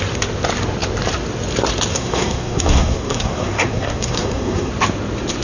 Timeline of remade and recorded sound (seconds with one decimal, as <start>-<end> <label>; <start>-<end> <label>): 0.0-1.9 recorded; 1.9-4.7 remade; 4.7-5.4 recorded